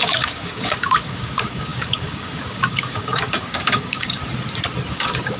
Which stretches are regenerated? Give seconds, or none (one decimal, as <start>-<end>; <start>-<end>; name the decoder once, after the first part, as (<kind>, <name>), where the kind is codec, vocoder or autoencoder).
0.0-4.2 (codec, DAC); 4.9-5.4